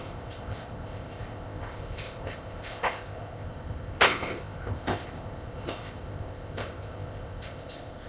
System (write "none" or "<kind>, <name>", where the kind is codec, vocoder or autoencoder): codec, ZipCodec